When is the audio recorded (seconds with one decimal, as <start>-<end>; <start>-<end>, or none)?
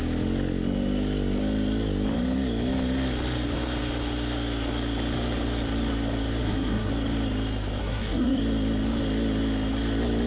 0.0-6.4; 6.9-7.8; 8.4-10.3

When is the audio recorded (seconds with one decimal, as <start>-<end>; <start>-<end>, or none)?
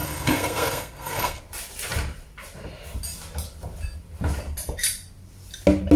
1.4-6.0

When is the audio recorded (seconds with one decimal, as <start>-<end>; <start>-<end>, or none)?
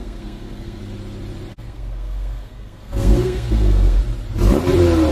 0.8-1.5; 4.0-5.1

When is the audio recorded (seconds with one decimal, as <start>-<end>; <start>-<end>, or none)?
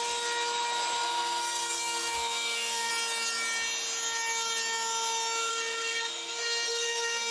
0.0-1.0; 2.9-5.5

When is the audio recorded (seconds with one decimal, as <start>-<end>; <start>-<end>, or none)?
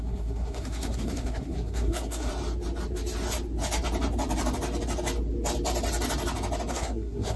2.3-6.7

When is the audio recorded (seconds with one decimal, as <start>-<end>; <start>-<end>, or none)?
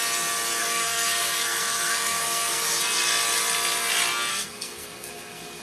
0.0-0.6; 2.8-4.3